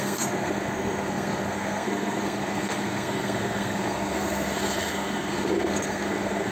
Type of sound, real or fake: fake